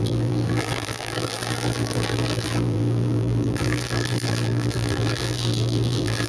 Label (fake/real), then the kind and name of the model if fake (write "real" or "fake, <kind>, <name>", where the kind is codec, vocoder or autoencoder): fake, vocoder, BigVGAN v2